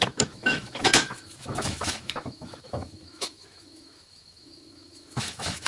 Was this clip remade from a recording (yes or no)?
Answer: yes